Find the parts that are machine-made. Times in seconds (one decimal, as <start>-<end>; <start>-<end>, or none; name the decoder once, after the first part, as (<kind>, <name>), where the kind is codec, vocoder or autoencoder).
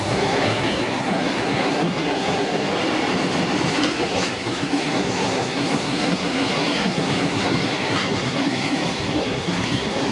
0.0-2.7 (codec, SNAC); 3.7-10.1